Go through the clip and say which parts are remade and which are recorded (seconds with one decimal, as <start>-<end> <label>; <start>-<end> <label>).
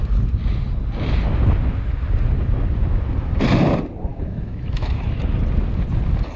0.0-4.1 recorded; 4.1-5.2 remade; 5.2-6.4 recorded